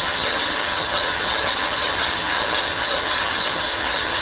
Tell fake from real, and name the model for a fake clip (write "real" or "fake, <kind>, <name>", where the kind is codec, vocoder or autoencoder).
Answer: fake, vocoder, HiFi-GAN